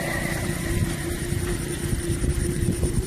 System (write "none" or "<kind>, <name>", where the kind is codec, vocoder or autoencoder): vocoder, BigVGAN v2